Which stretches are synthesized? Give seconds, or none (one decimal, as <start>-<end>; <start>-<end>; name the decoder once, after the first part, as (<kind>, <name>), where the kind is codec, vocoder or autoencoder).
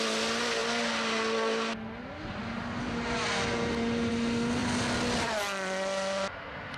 4.6-6.3 (vocoder, BigVGAN v2)